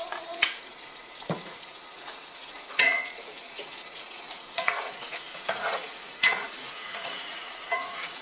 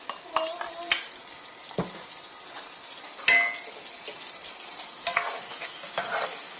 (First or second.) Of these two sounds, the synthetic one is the first